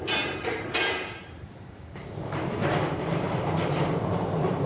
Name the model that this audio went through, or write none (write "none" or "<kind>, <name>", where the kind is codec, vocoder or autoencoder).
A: vocoder, BigVGAN v2